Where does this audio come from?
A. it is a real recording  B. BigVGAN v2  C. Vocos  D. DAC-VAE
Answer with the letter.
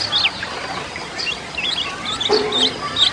A